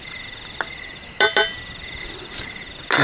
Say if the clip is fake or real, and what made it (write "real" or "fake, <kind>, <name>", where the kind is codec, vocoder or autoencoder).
real